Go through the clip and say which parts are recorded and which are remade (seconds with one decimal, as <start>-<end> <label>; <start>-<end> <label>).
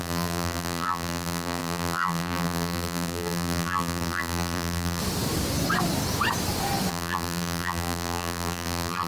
0.0-5.0 remade; 5.0-6.9 recorded; 6.9-9.1 remade